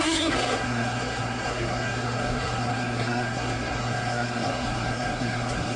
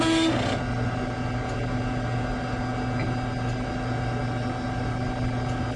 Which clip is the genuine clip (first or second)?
second